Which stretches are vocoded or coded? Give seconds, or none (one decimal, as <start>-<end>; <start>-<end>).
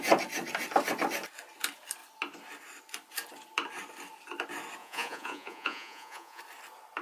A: 4.8-6.4